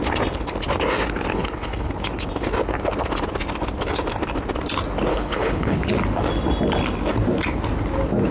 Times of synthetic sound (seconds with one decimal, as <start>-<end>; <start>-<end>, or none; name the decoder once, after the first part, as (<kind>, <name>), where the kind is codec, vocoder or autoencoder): 1.3-1.9 (codec, HILCodec); 5.1-5.8

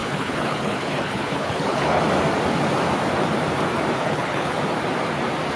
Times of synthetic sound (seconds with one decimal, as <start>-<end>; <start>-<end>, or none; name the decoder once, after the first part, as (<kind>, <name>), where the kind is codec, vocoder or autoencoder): 0.0-2.0 (codec, HILCodec); 4.0-4.6

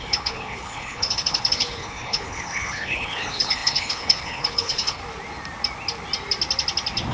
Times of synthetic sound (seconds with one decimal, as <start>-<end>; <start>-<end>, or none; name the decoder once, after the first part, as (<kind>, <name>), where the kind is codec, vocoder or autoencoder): 0.0-5.0 (codec, HILCodec)

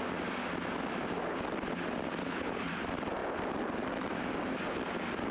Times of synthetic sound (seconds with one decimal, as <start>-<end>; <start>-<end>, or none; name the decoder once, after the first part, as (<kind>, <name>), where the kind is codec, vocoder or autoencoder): 2.2-2.7 (codec, HILCodec)

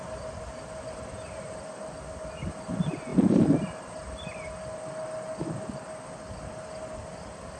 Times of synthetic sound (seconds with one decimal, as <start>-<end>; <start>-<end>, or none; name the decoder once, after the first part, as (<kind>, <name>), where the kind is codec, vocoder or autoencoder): none

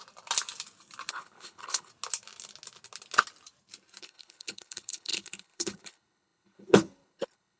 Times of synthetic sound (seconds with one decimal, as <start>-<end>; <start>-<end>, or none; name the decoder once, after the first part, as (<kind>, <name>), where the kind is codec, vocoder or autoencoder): 1.1-1.9 (codec, HILCodec); 4.0-7.6

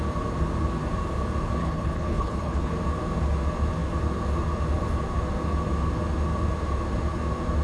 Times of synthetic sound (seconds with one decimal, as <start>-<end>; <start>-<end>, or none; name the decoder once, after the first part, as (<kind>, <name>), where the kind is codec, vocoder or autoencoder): 1.6-2.7 (codec, HILCodec)

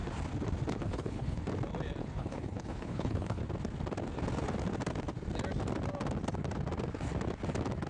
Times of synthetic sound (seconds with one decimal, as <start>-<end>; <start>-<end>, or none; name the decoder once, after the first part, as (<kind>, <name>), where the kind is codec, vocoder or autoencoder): 0.7-1.4 (codec, HILCodec); 2.0-3.4